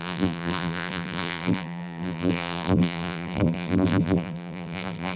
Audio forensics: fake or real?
fake